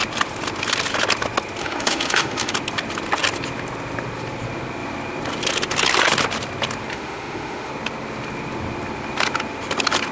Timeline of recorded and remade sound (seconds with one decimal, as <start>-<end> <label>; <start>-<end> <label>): 0.0-1.6 recorded; 1.6-2.5 remade; 2.5-6.9 recorded; 6.9-7.7 remade; 7.7-10.1 recorded